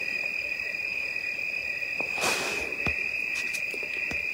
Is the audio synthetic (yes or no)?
yes